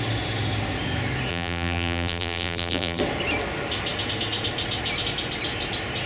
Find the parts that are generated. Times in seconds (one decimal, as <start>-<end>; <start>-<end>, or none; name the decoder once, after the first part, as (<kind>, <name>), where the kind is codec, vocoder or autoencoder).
1.3-3.0 (vocoder, BigVGAN v2)